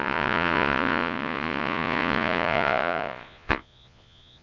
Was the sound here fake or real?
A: fake